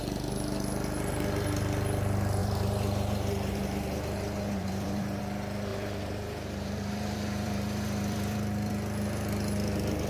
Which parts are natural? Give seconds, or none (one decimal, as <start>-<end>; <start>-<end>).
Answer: 0.0-2.4; 5.2-5.7; 8.7-10.1